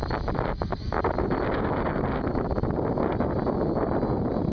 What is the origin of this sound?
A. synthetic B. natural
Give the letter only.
B